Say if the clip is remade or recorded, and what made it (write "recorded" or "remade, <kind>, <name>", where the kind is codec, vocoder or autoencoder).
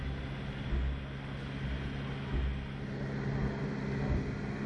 recorded